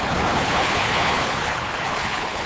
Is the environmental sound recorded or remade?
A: remade